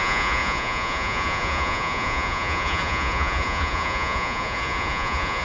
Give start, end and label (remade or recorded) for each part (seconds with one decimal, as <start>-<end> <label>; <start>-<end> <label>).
0.0-5.4 remade